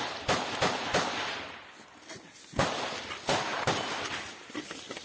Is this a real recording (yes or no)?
yes